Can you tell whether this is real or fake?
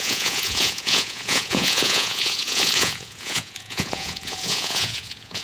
fake